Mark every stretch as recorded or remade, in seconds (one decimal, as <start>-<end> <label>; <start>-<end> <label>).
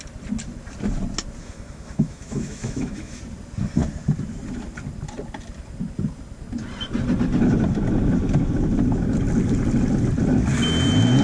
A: 0.0-1.4 recorded; 1.4-3.2 remade; 3.2-11.2 recorded